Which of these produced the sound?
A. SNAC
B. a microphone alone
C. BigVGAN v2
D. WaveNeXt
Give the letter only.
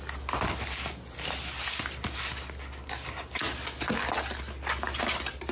B